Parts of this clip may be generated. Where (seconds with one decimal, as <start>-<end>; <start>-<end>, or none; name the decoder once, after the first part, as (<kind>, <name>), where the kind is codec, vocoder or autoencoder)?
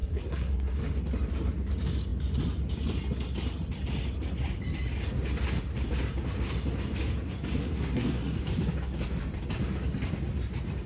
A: 0.0-0.8 (codec, SNAC); 7.6-8.4